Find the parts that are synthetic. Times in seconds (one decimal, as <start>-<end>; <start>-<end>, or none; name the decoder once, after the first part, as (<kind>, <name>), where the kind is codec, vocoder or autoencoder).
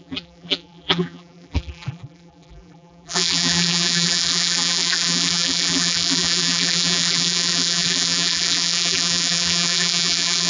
0.0-10.5 (vocoder, BigVGAN v2)